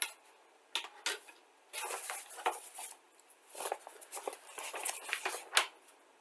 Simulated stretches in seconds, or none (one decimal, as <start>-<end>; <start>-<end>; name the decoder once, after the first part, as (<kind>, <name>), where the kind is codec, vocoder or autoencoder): none